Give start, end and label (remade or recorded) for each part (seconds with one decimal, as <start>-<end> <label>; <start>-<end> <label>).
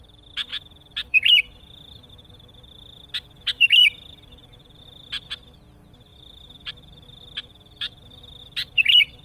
0.0-0.5 recorded; 0.5-4.8 remade; 4.8-6.1 recorded; 6.1-6.7 remade; 6.7-7.5 recorded; 7.5-9.2 remade